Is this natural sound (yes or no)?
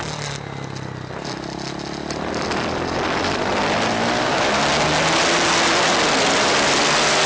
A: yes